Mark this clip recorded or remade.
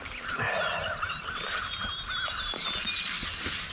recorded